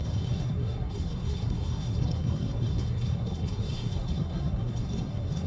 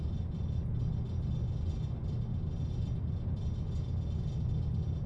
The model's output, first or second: first